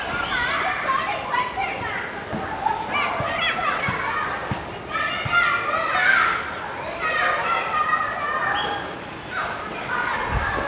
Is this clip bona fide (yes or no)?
yes